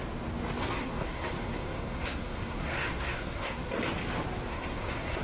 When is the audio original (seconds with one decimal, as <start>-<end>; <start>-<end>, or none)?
0.0-0.6; 3.7-4.5